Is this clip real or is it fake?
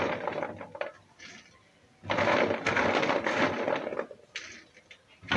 real